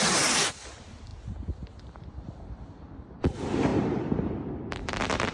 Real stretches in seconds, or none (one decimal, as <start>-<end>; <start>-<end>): 1.1-1.7